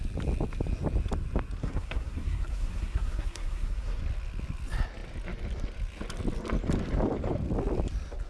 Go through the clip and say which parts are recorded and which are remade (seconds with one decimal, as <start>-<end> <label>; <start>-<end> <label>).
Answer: 0.0-1.6 recorded; 1.6-4.0 remade; 4.0-8.3 recorded